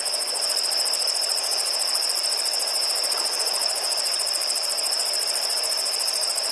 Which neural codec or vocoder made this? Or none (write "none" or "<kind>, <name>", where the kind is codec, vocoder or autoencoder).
none